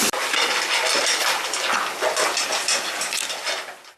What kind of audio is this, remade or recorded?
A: recorded